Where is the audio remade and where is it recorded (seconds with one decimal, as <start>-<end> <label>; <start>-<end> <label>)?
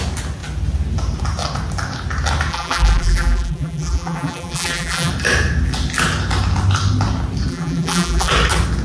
0.0-2.5 recorded; 2.5-5.1 remade; 5.1-7.5 recorded; 7.5-8.3 remade; 8.3-8.8 recorded